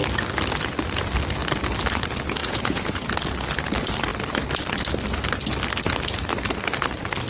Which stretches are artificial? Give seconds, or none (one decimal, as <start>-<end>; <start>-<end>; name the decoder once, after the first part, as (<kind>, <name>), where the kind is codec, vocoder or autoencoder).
2.4-3.1 (vocoder, Vocos)